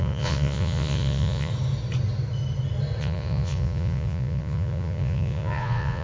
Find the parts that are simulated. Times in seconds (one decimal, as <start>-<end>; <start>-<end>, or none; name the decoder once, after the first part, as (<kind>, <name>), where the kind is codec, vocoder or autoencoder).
0.0-1.5 (vocoder, Vocos); 3.0-6.0

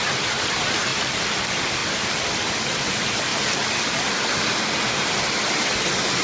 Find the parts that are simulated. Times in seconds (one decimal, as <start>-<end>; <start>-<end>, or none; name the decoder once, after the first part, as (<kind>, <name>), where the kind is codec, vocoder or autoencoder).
1.8-2.6 (vocoder, BigVGAN v2); 3.3-4.7

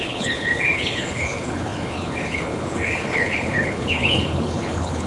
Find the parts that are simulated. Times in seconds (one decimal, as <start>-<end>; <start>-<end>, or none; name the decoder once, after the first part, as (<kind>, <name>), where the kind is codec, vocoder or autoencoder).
0.0-5.1 (codec, HILCodec)

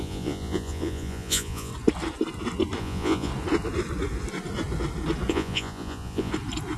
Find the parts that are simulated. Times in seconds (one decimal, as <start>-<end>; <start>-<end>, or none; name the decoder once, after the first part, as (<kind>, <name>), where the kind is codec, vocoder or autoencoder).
0.0-1.7 (vocoder, Vocos); 2.8-3.3; 5.3-6.3

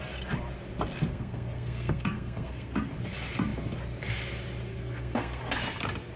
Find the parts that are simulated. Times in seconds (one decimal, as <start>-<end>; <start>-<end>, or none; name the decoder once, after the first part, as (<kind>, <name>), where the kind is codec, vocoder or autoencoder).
1.1-3.0 (codec, SNAC); 4.7-5.4

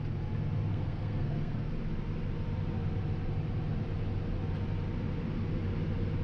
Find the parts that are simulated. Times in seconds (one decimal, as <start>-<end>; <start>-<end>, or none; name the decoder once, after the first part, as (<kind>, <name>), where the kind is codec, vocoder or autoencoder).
0.7-1.7 (codec, SNAC)

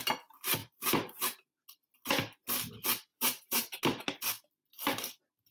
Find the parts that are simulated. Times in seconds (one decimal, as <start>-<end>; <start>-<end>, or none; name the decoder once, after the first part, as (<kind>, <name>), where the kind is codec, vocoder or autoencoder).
0.6-1.5 (vocoder, BigVGAN v2); 3.1-3.8

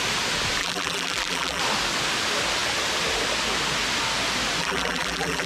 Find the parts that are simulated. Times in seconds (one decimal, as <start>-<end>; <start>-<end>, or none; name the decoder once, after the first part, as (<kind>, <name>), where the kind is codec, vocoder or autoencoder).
0.6-1.6 (vocoder, BigVGAN v2); 4.6-5.5